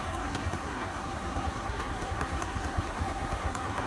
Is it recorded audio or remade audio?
remade